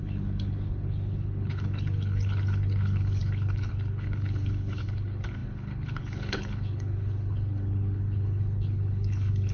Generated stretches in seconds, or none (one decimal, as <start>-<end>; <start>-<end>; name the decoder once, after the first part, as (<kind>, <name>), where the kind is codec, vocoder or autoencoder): 0.0-9.5 (codec, HILCodec)